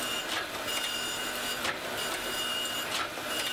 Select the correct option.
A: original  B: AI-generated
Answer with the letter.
B